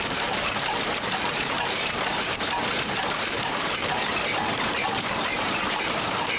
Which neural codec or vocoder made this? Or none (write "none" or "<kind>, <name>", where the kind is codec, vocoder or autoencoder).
vocoder, BigVGAN v2